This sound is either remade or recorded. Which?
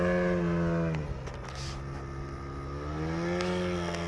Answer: recorded